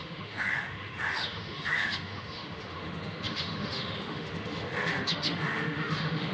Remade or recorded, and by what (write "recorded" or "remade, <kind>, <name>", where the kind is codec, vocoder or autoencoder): remade, autoencoder, DAC-VAE